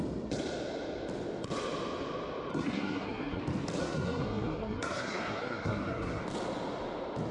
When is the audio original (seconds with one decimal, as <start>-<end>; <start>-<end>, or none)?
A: 0.0-2.5; 3.4-3.8; 6.2-7.3